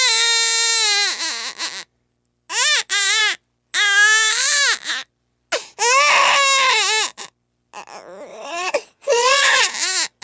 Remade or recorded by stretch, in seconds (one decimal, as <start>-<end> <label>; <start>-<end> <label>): 0.0-8.3 recorded; 8.3-9.7 remade; 9.7-10.2 recorded